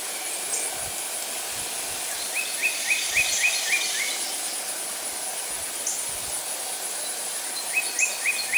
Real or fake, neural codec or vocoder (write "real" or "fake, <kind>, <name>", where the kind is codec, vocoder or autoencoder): real